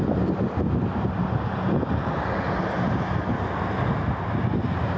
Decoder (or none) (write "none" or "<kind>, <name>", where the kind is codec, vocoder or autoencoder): none